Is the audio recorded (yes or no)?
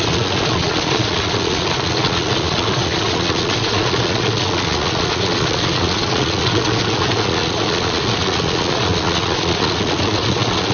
no